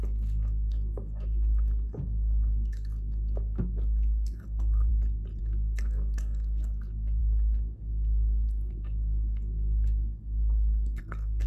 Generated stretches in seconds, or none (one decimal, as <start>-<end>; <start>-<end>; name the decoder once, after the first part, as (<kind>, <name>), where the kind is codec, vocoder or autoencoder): 0.0-4.9 (codec, SNAC); 5.4-11.5